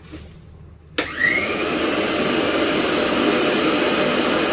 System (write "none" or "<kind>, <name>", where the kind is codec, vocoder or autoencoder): none